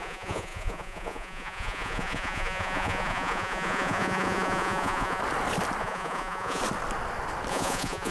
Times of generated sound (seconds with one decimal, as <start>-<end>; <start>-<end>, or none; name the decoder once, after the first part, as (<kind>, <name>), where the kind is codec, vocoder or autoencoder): 0.0-5.2 (vocoder, Vocos); 5.8-6.6; 7.5-8.1